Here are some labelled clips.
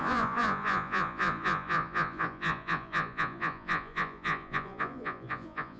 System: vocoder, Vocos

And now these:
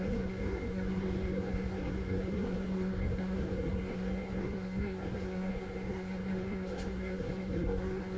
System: codec, SNAC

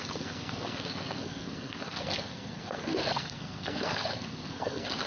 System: codec, SNAC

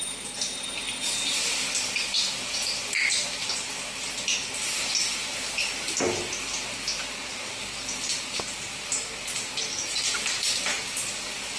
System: none